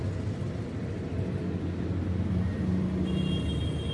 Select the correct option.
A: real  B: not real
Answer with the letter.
A